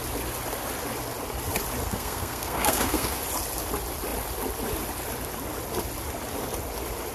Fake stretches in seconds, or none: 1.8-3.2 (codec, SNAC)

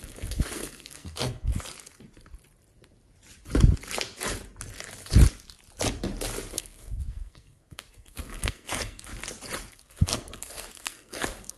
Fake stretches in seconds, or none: 0.0-1.5 (codec, SNAC); 6.5-9.1; 9.7-11.6

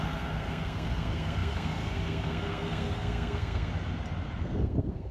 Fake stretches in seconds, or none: 0.0-3.7 (codec, SNAC); 4.4-5.1

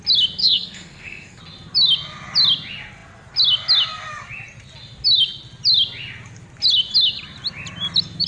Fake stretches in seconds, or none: 0.4-1.4 (codec, SNAC)

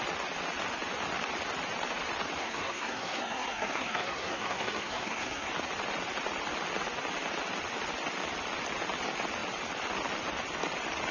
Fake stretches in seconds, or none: 2.4-5.5 (codec, SNAC)

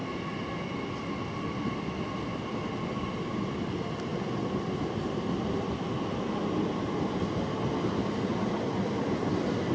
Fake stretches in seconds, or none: none